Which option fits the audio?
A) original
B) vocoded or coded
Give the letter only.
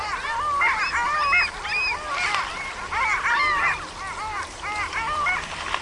A